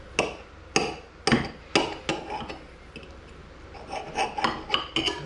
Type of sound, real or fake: real